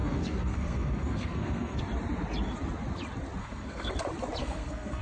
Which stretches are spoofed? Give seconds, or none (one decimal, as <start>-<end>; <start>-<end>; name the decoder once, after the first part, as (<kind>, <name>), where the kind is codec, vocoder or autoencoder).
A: 0.0-1.8 (codec, SNAC); 3.4-3.9; 4.4-5.0